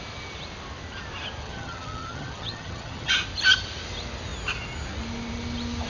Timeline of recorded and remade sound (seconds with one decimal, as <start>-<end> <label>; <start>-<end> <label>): 0.0-1.4 recorded; 1.4-3.1 remade; 3.1-5.9 recorded